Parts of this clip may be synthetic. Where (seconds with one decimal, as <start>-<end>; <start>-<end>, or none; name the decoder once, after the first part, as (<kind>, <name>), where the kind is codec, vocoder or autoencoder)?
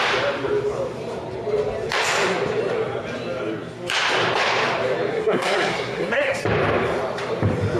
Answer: 5.1-6.4 (codec, SNAC)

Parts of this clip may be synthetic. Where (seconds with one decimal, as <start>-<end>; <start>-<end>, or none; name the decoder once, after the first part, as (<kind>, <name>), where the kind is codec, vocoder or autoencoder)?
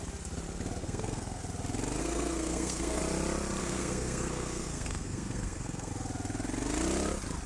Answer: 0.8-1.4 (codec, SNAC); 2.0-3.0; 3.6-5.9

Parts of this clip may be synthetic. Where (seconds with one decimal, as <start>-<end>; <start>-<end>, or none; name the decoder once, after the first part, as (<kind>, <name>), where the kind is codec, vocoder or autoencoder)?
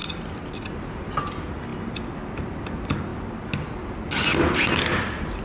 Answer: none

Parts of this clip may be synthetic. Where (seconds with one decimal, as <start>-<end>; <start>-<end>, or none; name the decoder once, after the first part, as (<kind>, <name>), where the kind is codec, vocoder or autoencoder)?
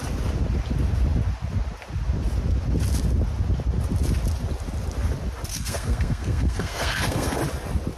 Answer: 5.5-7.4 (codec, SNAC)